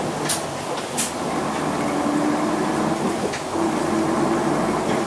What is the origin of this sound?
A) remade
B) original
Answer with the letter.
B